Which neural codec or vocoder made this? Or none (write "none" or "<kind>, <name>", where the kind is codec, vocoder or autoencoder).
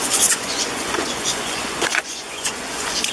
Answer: vocoder, Vocos